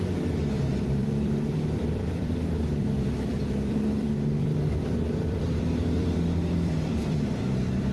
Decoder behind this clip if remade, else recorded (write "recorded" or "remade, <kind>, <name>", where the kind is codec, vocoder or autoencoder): remade, vocoder, BigVGAN v2